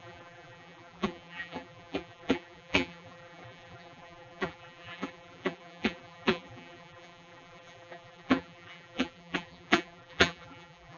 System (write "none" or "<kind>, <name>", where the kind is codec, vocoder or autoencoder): vocoder, BigVGAN v2